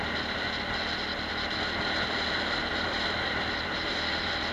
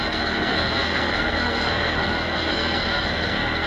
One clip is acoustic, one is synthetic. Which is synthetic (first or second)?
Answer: second